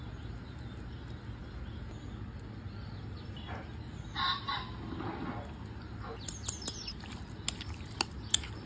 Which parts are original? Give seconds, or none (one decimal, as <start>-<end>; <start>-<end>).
0.0-8.7